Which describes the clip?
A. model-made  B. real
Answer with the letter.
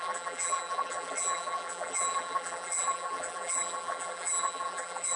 A